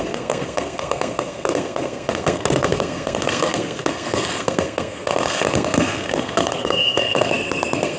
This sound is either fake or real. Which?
fake